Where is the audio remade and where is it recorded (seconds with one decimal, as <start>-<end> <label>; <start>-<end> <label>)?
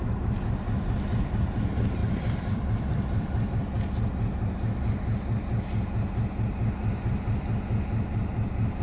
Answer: 0.0-2.0 recorded; 2.0-3.5 remade; 3.5-6.8 recorded; 6.8-7.3 remade; 7.3-8.8 recorded